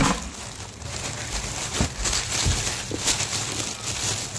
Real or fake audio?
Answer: real